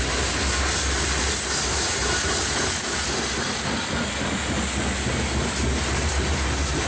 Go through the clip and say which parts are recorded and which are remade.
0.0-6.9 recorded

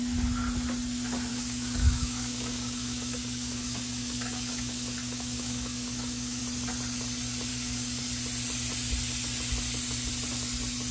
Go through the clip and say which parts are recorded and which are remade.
0.0-1.3 recorded; 1.3-6.4 remade; 6.4-7.5 recorded; 7.5-8.0 remade; 8.0-10.9 recorded

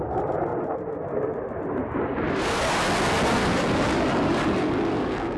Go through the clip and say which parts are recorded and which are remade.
0.0-3.4 recorded; 3.4-5.4 remade

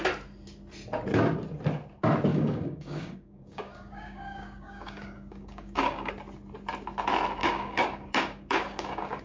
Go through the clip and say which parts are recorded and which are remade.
0.0-2.3 recorded; 2.3-6.1 remade; 6.1-7.4 recorded; 7.4-9.2 remade

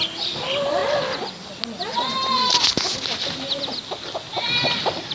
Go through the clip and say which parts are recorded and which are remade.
0.0-5.1 recorded

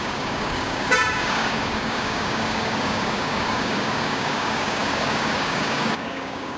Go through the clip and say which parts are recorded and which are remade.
0.0-6.6 remade

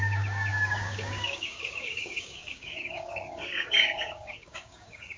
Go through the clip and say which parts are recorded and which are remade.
0.0-5.2 remade

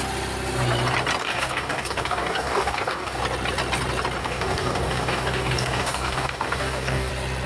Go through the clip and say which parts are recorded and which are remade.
0.0-1.2 recorded; 1.2-3.2 remade; 3.2-4.2 recorded; 4.2-7.1 remade; 7.1-7.5 recorded